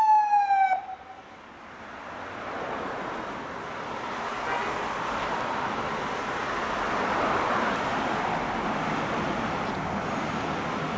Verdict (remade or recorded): recorded